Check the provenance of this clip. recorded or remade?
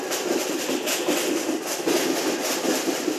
remade